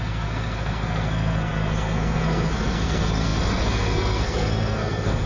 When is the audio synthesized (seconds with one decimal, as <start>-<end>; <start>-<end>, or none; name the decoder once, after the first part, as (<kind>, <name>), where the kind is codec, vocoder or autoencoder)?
0.0-5.3 (codec, SNAC)